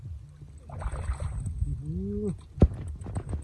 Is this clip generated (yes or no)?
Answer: no